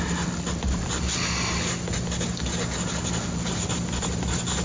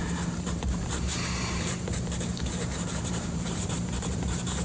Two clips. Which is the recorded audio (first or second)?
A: first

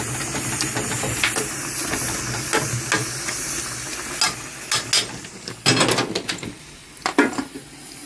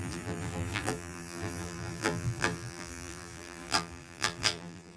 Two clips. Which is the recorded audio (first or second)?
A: first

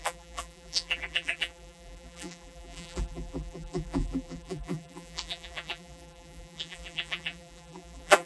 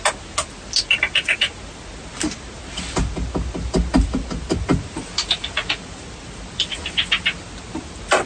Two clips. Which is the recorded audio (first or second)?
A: second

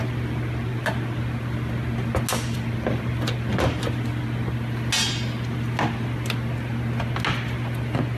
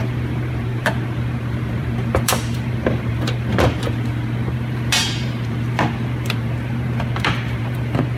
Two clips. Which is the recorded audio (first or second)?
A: first